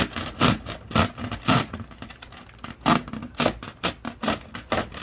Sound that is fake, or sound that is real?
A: real